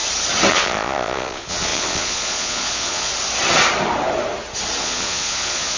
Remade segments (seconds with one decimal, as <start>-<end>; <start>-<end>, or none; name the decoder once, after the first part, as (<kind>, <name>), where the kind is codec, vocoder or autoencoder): 0.5-3.1 (vocoder, Vocos); 4.8-5.8